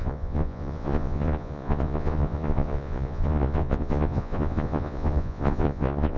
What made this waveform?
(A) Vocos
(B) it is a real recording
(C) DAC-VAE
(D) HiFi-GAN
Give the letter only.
A